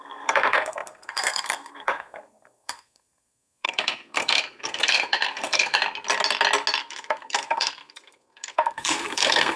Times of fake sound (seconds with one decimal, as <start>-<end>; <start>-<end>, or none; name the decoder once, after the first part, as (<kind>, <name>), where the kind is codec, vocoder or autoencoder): 0.0-5.8 (codec, SNAC); 6.8-9.6